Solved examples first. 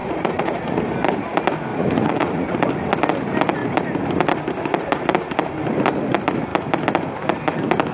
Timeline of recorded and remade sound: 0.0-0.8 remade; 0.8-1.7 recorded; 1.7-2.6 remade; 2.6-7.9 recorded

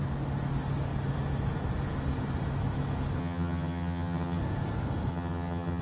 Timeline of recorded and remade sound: 0.0-3.2 recorded; 3.2-4.4 remade; 4.4-5.1 recorded; 5.1-5.8 remade

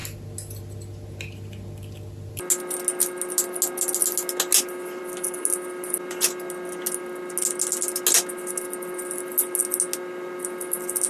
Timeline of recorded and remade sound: 0.0-11.1 recorded

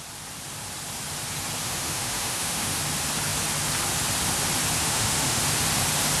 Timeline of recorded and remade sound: 0.0-1.6 recorded; 1.6-2.8 remade; 2.8-4.8 recorded; 4.8-5.4 remade; 5.4-6.2 recorded